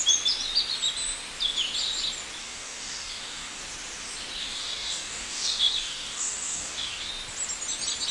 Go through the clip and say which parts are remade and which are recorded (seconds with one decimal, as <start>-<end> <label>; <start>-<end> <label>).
0.0-2.4 recorded; 2.4-3.6 remade; 3.6-4.4 recorded; 4.4-7.1 remade; 7.1-8.1 recorded